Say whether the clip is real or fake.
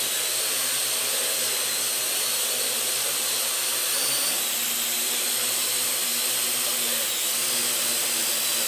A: real